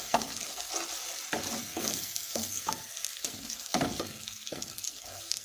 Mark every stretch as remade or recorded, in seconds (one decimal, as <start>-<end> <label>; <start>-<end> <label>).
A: 0.0-0.7 remade; 0.7-1.6 recorded; 1.6-5.4 remade